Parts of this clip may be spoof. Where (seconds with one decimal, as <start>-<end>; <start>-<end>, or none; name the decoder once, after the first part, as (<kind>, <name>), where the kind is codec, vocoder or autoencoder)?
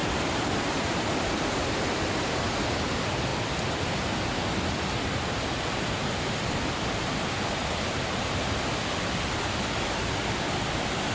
0.0-2.1 (vocoder, BigVGAN v2)